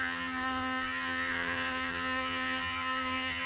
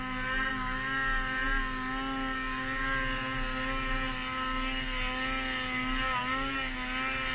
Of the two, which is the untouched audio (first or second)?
second